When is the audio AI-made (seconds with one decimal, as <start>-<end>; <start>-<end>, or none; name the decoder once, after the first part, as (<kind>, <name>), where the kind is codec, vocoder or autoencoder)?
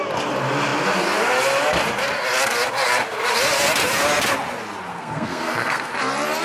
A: 4.9-5.9 (codec, SNAC)